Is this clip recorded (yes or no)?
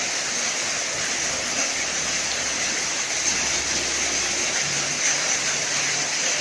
yes